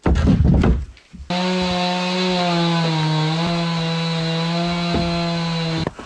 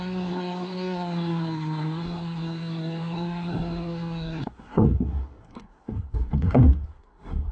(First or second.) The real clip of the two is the first